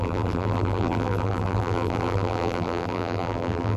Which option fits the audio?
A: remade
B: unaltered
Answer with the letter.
A